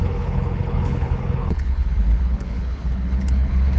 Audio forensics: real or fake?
fake